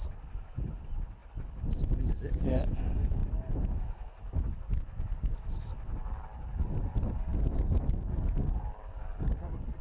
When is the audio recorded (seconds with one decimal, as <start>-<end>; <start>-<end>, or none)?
0.0-9.8